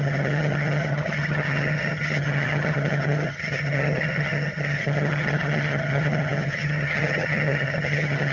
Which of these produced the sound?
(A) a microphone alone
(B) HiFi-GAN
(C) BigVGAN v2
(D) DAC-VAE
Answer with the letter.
B